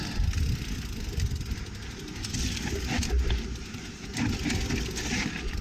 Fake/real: real